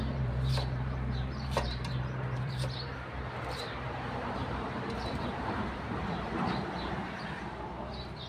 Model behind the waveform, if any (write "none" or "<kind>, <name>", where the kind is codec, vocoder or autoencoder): vocoder, BigVGAN v2